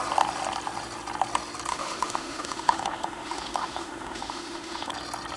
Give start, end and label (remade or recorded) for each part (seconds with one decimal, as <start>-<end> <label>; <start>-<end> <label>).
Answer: 0.0-1.7 recorded; 1.7-4.9 remade; 4.9-5.4 recorded